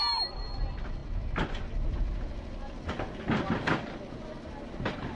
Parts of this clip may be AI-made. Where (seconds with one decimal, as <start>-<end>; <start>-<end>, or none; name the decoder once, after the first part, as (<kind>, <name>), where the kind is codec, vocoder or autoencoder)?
none

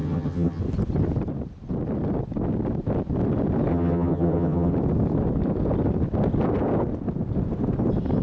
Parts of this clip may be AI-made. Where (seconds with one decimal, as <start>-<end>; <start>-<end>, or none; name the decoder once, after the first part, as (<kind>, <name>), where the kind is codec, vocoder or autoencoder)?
0.0-0.6 (vocoder, HiFi-GAN); 3.7-4.7

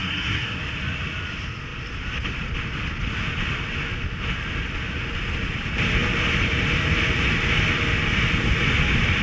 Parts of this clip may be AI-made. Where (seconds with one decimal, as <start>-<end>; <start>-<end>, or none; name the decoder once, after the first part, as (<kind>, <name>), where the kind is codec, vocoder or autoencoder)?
0.0-0.6 (codec, SNAC)

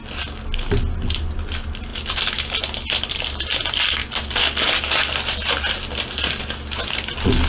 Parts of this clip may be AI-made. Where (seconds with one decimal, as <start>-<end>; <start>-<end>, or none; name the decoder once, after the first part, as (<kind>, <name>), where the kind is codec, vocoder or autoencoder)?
none

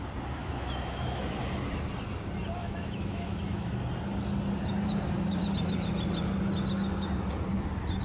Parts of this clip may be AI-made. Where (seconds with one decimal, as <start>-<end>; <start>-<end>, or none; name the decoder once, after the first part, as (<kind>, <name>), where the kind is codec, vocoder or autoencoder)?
0.4-1.2 (autoencoder, DAC-VAE); 2.6-3.7